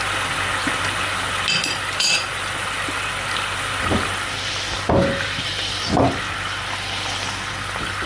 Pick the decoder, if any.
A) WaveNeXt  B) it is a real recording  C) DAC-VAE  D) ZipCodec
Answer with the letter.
B